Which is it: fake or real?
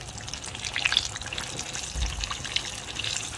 real